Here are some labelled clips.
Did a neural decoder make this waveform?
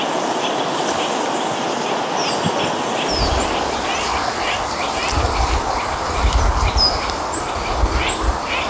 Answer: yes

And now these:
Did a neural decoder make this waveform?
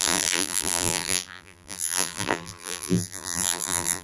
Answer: yes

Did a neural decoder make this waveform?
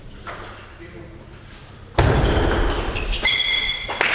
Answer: yes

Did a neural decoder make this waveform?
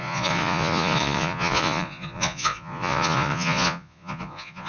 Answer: yes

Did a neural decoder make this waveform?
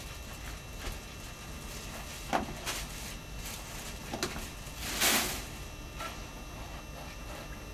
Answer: no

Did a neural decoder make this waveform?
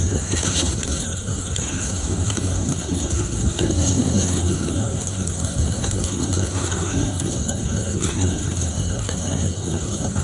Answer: yes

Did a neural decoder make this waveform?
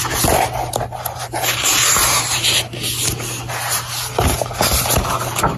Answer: no